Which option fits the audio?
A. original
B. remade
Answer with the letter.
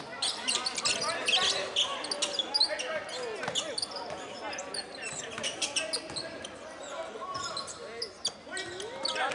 A